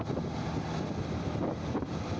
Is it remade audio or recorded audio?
recorded